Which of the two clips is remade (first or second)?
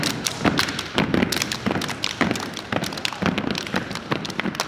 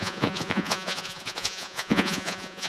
second